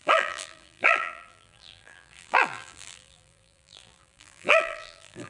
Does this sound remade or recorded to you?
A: remade